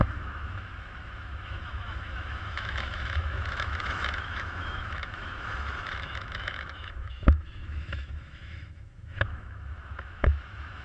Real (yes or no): no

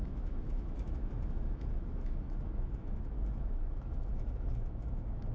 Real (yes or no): no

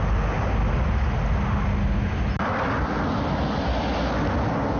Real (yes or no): yes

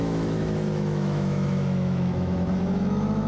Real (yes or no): no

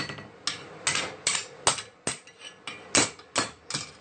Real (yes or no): yes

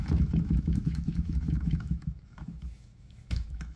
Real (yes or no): no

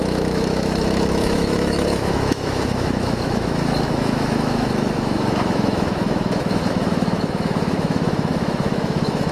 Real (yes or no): no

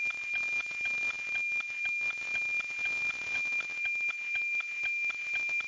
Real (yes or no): yes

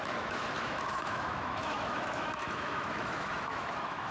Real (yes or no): no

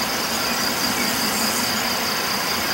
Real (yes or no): yes